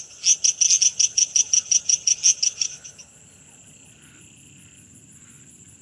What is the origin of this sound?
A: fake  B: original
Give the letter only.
B